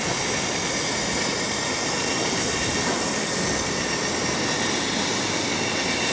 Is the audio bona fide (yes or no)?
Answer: yes